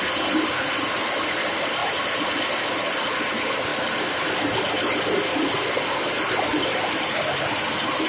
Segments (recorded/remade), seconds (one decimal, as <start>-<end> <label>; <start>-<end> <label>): 0.0-6.5 recorded; 6.5-7.4 remade; 7.4-8.1 recorded

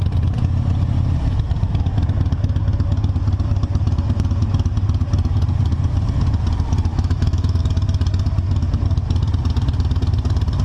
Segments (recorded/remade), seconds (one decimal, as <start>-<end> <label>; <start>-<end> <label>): 0.0-6.9 recorded; 6.9-7.6 remade; 7.6-10.6 recorded

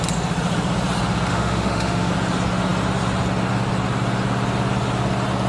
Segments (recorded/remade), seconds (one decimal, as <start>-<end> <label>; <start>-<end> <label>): 0.0-1.3 recorded; 1.3-2.1 remade; 2.1-5.5 recorded

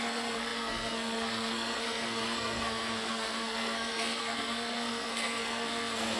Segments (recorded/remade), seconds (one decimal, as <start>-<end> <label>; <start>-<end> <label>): 0.0-6.2 remade